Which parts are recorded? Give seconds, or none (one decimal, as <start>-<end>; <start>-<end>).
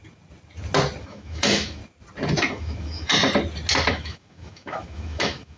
0.0-1.0; 1.8-2.5; 3.1-3.9